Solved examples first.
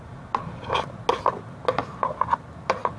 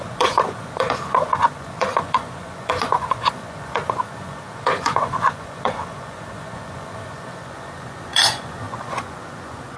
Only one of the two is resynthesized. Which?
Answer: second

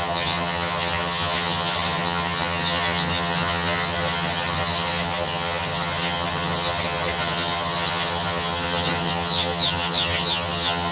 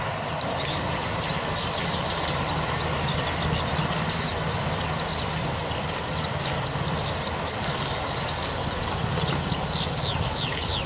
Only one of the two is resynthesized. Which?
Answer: first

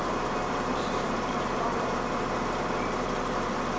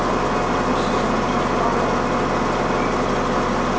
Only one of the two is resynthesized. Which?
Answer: first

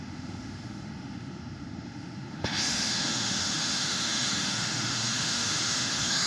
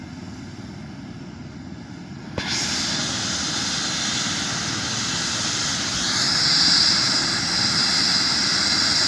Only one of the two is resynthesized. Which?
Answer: first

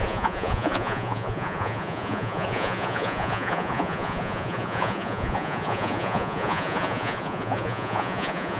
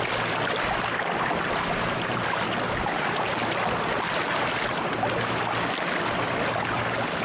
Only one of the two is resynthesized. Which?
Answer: first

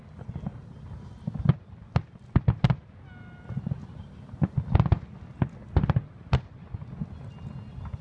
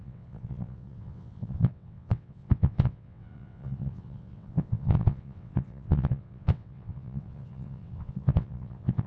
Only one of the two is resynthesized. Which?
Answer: second